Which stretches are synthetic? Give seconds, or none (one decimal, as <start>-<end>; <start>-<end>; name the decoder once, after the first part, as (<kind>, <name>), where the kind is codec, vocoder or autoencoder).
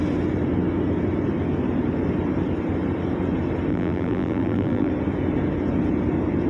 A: 3.7-4.9 (vocoder, BigVGAN v2)